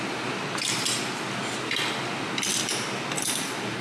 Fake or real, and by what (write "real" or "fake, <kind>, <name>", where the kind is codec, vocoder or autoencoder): real